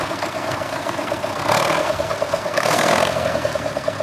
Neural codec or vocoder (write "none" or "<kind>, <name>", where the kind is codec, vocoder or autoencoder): codec, SNAC